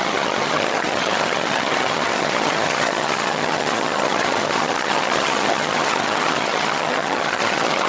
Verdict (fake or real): fake